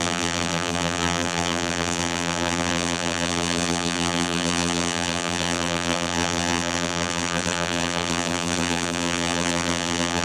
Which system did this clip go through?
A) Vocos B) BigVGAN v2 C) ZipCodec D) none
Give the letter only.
B